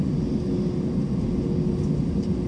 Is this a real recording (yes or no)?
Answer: yes